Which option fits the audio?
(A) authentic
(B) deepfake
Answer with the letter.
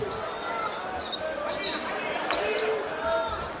A